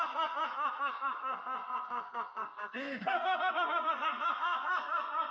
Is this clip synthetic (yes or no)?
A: yes